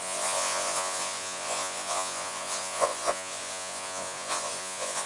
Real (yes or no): no